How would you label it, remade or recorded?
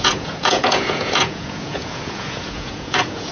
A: remade